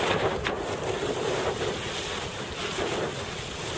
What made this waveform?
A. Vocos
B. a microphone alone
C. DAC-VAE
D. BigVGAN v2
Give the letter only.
B